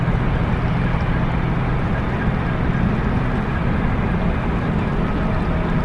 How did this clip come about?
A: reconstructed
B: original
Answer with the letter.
B